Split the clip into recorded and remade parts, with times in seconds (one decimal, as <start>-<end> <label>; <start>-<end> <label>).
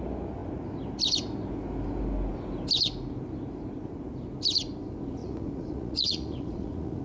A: 0.0-5.2 recorded; 5.2-7.0 remade